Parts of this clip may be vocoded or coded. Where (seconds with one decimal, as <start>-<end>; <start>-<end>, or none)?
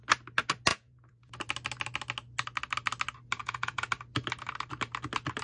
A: 0.7-1.3; 3.4-3.9